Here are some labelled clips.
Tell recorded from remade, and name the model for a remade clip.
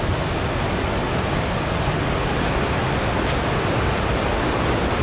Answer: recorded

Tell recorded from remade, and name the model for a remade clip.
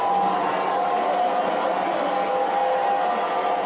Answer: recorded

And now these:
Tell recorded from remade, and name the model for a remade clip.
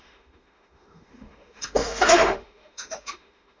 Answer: remade, autoencoder, DAC-VAE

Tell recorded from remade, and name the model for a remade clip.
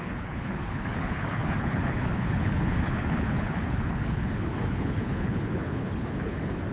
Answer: remade, codec, HILCodec